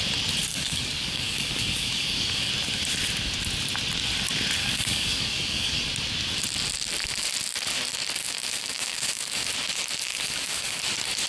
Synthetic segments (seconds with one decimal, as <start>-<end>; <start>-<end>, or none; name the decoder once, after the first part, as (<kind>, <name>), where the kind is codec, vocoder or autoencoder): 0.5-2.5 (codec, DAC); 4.6-5.8; 8.2-9.5; 10.1-10.8